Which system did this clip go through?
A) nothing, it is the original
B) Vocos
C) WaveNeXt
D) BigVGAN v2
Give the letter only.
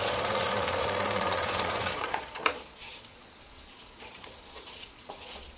B